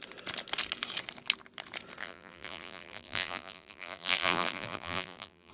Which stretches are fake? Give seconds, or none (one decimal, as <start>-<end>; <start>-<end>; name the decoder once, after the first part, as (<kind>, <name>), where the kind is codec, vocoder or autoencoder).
2.0-5.5 (vocoder, BigVGAN v2)